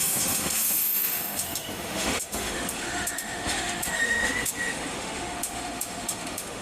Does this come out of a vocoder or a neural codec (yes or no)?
yes